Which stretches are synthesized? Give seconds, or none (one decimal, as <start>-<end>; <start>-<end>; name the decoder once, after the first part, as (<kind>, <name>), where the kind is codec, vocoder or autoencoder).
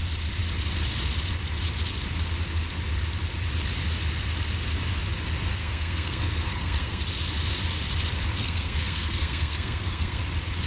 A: 5.6-7.0 (codec, SNAC); 8.4-10.2